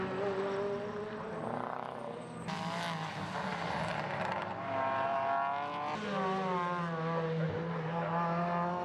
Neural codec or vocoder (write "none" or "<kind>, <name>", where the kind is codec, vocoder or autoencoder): none